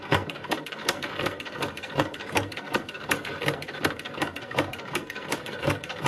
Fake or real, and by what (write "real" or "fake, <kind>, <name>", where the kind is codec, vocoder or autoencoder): fake, codec, SNAC